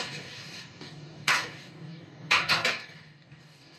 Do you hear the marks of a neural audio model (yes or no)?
yes